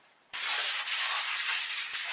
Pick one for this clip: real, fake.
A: fake